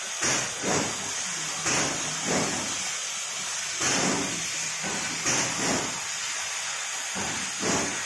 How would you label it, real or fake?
real